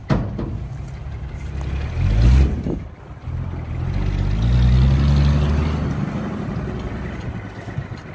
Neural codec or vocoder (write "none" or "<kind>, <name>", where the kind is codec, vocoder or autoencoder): none